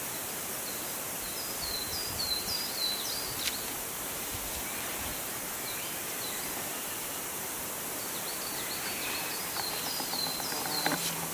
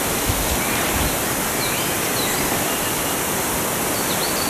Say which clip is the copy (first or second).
first